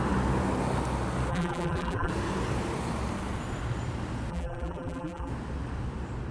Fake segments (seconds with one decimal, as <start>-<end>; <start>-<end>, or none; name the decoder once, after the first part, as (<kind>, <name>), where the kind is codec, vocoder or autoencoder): 1.3-2.1 (vocoder, BigVGAN v2); 4.3-5.3